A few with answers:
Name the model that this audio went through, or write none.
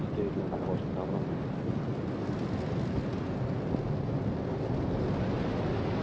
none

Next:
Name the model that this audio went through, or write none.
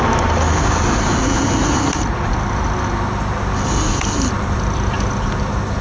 none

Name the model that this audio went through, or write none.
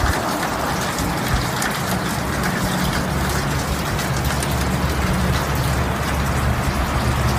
none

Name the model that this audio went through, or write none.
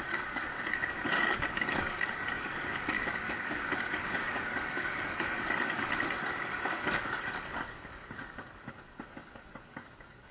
codec, DAC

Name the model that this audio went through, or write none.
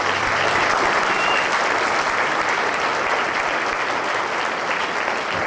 none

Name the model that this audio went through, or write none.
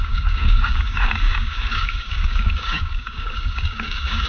codec, DAC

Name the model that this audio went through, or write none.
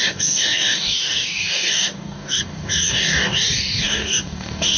codec, DAC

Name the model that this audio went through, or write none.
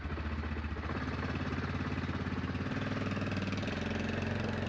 none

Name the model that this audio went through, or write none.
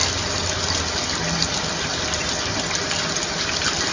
none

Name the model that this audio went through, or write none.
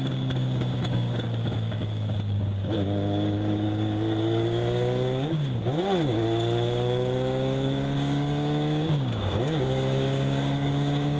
codec, DAC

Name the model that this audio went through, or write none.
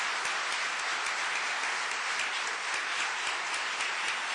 none